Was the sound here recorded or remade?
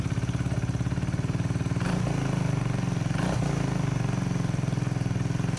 recorded